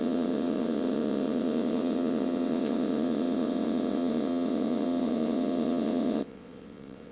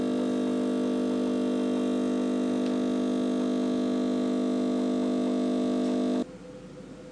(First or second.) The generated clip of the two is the first